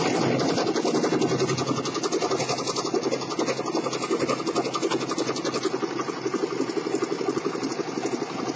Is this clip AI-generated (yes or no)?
no